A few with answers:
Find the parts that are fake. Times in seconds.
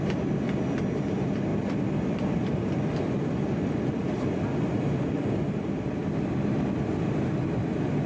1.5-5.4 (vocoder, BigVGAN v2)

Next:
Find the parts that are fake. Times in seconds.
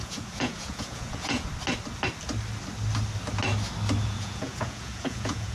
0.0-1.5 (vocoder, Vocos); 4.0-5.5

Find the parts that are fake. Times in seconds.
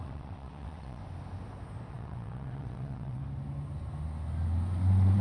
0.0-1.0 (vocoder, WaveNeXt); 1.9-3.2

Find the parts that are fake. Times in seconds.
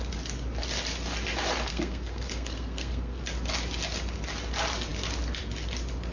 1.7-3.2 (codec, SNAC)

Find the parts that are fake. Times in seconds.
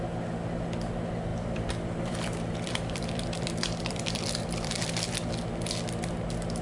1.3-5.3 (vocoder, BigVGAN v2)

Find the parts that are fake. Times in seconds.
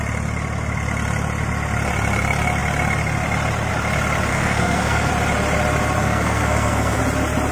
4.3-5.1 (codec, SNAC); 6.0-7.0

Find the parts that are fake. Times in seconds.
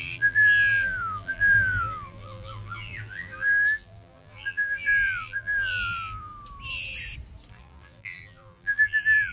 0.0-6.3 (vocoder, BigVGAN v2); 7.5-9.3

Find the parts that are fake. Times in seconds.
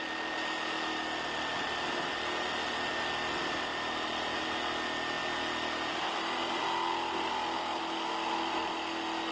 none